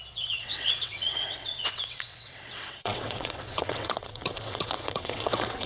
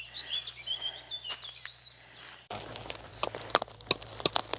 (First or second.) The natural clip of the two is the second